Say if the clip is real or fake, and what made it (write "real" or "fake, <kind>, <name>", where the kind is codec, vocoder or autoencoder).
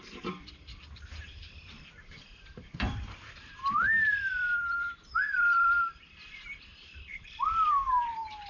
fake, vocoder, BigVGAN v2